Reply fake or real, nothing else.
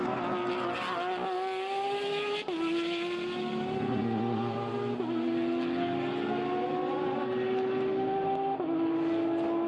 real